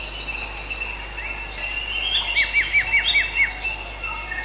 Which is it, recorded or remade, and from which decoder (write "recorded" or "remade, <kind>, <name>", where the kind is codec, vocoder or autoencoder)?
recorded